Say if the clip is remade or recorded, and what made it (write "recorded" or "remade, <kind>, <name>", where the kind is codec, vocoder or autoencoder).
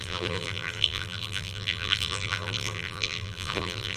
remade, vocoder, BigVGAN v2